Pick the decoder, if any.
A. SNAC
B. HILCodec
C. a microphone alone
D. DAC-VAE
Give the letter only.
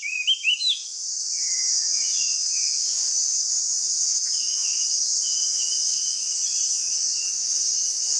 D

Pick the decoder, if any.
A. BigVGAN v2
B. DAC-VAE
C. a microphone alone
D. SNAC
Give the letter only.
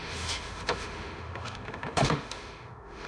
B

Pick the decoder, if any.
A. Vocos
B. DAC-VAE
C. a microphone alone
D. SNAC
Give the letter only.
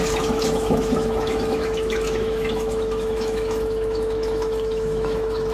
B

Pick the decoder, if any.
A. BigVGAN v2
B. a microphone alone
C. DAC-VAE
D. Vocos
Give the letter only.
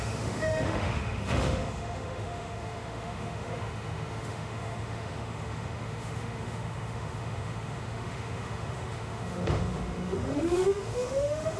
C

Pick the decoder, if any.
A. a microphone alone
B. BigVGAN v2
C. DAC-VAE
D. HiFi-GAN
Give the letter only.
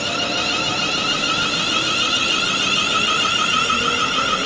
A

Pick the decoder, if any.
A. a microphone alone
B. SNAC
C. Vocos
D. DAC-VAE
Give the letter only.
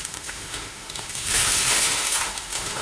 D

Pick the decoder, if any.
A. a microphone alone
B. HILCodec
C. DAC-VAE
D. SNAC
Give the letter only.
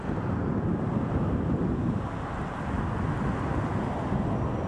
A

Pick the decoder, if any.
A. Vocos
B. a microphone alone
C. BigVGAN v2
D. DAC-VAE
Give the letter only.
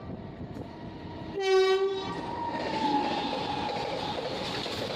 B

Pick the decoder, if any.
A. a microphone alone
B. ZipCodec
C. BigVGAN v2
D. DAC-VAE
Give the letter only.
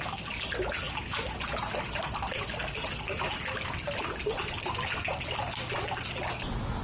A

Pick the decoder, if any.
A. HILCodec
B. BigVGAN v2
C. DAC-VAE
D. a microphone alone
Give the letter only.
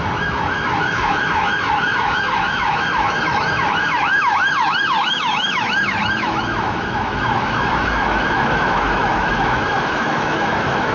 C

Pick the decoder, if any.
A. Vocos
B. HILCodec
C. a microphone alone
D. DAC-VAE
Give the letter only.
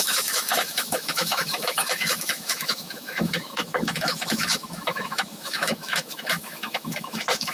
D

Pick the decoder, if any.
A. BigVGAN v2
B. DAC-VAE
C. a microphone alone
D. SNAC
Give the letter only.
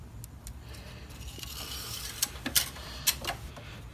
C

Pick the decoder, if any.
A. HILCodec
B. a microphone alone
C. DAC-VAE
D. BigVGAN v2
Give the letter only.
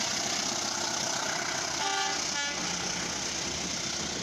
B